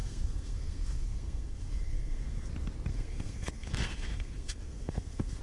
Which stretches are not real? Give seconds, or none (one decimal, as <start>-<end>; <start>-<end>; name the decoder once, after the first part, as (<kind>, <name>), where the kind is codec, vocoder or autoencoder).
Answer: 0.0-2.5 (codec, SNAC); 2.9-5.4